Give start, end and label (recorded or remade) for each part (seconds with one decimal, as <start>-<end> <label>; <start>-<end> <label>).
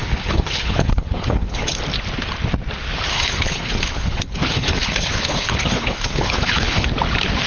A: 0.0-1.8 remade; 1.8-3.1 recorded; 3.1-6.9 remade; 6.9-7.5 recorded